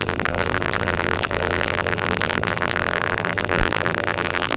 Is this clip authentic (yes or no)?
no